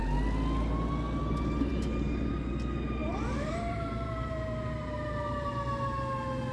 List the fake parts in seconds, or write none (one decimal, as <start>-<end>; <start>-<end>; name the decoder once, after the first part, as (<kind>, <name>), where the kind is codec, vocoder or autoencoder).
1.7-2.3 (vocoder, BigVGAN v2); 3.0-5.5